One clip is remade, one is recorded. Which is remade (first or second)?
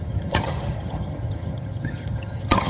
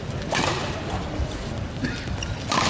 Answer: first